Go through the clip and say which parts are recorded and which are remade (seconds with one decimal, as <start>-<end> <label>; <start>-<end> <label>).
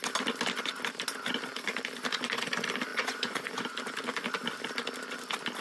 0.0-2.9 recorded; 2.9-3.5 remade; 3.5-5.6 recorded